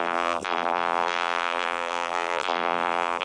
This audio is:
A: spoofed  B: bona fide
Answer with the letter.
A